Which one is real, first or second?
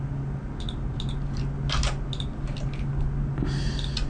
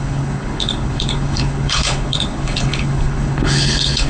first